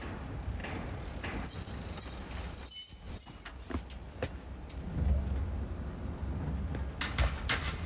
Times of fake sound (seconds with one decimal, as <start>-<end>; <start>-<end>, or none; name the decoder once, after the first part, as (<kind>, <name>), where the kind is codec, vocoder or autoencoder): none